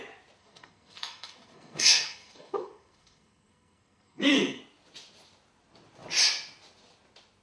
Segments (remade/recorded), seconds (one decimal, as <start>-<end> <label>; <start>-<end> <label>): 0.0-0.4 recorded; 0.4-4.6 remade; 4.6-7.4 recorded